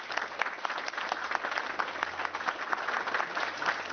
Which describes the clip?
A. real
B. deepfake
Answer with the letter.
A